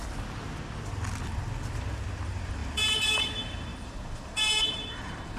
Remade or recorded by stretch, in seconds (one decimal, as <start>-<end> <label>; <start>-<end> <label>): 0.0-2.1 recorded; 2.1-5.4 remade